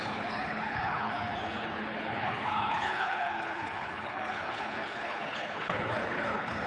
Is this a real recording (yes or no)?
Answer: no